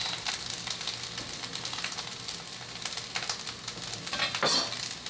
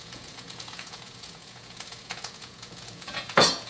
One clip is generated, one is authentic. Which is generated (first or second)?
second